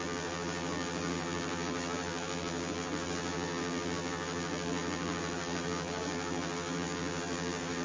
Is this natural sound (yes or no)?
no